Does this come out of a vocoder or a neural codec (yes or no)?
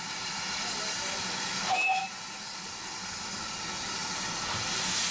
no